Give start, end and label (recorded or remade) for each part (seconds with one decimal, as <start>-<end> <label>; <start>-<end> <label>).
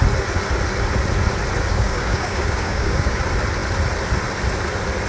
0.0-1.7 recorded; 1.7-3.2 remade; 3.2-5.1 recorded